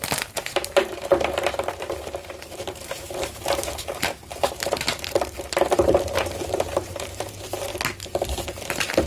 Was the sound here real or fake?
fake